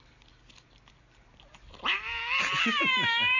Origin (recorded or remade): recorded